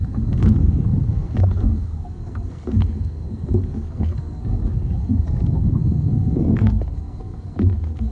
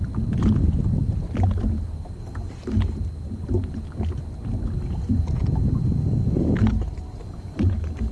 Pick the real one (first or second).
second